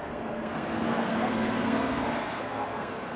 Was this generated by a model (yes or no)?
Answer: yes